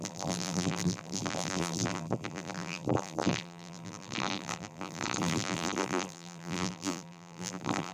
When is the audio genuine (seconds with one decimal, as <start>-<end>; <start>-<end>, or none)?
none